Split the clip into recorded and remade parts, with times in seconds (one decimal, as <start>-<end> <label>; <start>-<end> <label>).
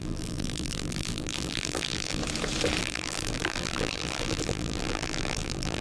0.0-2.2 remade; 2.2-2.8 recorded; 2.8-5.8 remade